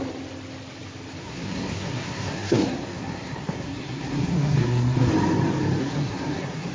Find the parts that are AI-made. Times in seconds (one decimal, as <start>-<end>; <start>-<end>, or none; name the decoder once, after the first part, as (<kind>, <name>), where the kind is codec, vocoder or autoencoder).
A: 1.2-5.1 (codec, SNAC); 5.8-6.7